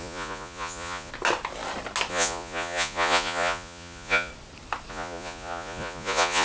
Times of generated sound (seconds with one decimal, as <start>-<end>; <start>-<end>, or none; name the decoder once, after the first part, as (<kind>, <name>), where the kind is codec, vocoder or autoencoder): 0.0-1.1 (vocoder, Vocos); 2.1-4.3; 4.9-6.4

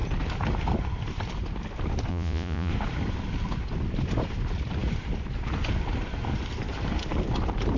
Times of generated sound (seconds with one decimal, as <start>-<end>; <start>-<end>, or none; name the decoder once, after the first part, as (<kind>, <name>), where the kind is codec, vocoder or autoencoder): 2.1-2.7 (vocoder, Vocos)

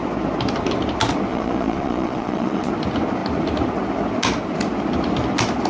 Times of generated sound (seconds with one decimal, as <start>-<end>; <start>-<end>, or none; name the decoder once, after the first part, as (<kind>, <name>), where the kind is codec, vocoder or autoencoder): 1.3-2.7 (vocoder, Vocos)

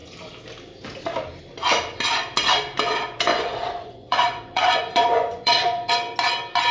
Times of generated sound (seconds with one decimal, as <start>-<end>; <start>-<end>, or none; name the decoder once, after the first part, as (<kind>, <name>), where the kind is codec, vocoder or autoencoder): 3.3-5.9 (vocoder, Vocos)